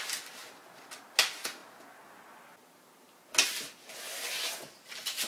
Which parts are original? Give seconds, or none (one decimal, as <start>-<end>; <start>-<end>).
0.0-5.3